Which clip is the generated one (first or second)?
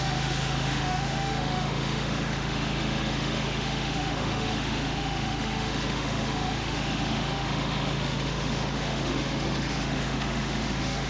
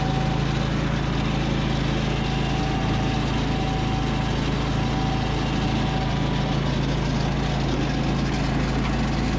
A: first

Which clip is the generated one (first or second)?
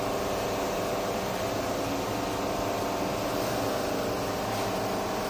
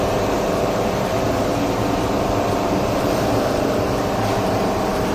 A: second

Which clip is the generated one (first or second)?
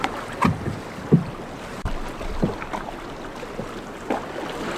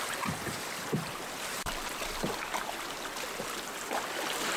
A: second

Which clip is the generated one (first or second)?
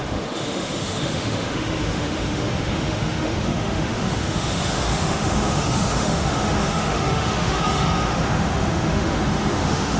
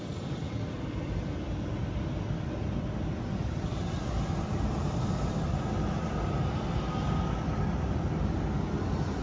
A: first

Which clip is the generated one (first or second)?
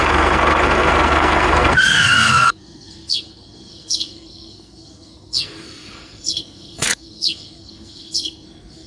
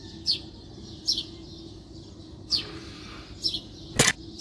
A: first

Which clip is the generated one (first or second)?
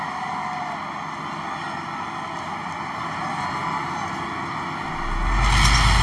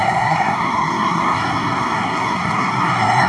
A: second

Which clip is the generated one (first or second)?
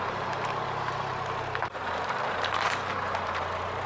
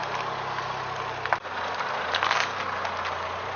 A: first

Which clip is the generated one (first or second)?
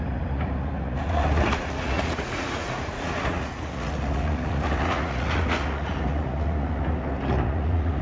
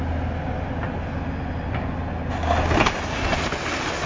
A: first